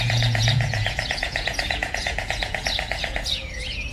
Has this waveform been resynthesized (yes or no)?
yes